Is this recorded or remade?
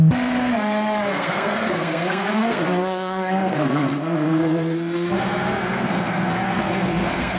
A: remade